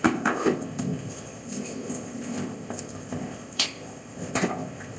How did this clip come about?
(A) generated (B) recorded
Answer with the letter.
A